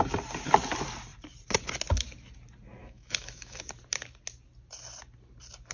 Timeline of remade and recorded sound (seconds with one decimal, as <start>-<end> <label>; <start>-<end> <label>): 0.0-2.8 recorded; 2.8-3.6 remade; 3.6-5.7 recorded